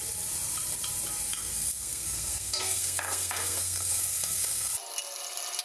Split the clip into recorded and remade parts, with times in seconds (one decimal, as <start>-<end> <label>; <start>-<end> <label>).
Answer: 0.0-1.3 recorded; 1.3-4.7 remade; 4.7-5.6 recorded